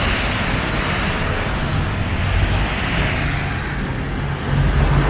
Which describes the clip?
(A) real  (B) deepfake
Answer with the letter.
A